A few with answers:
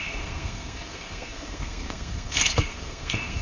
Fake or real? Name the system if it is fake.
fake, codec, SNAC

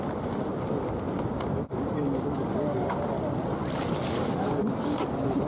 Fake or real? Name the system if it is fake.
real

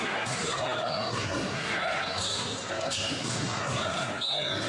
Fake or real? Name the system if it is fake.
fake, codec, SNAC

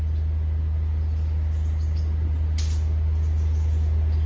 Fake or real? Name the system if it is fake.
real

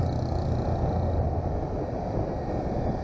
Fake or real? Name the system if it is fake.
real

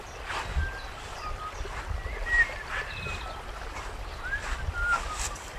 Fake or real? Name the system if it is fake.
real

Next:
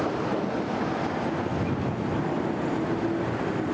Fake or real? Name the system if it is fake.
real